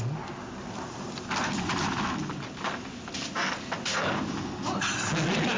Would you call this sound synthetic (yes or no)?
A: no